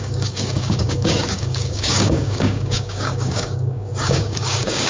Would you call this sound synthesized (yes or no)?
yes